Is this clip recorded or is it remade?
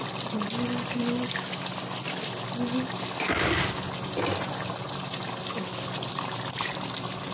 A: recorded